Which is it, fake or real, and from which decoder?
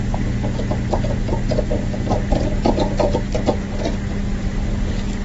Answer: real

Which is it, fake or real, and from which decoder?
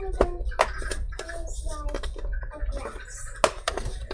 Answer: real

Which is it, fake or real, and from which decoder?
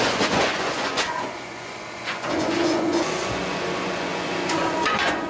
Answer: fake, vocoder, Vocos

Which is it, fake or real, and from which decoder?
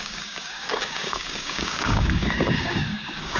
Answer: fake, codec, DAC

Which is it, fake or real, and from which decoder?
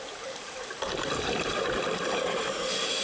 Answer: fake, vocoder, BigVGAN v2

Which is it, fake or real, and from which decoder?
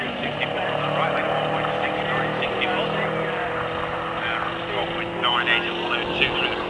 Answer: real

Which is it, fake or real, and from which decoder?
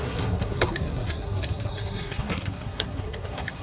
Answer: fake, codec, SNAC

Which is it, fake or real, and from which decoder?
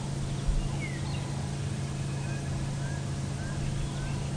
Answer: real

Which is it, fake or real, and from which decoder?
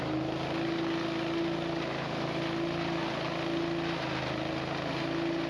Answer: real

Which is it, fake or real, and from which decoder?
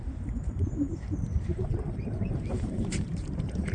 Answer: fake, vocoder, BigVGAN v2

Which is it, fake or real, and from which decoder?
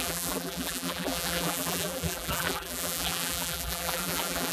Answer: fake, vocoder, BigVGAN v2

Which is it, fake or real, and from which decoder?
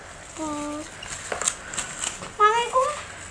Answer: real